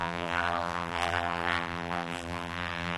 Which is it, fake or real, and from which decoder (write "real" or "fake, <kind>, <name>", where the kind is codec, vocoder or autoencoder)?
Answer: fake, vocoder, BigVGAN v2